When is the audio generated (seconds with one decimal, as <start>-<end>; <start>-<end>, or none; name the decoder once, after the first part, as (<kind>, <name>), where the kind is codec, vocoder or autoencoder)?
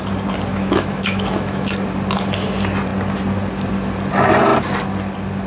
0.5-1.7 (autoencoder, DAC-VAE)